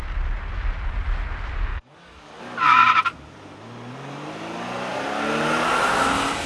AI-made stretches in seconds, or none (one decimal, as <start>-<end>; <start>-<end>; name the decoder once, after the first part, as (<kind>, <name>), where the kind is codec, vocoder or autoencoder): 1.7-2.4 (codec, DAC)